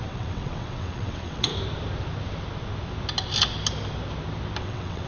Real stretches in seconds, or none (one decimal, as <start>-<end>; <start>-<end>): 1.5-4.6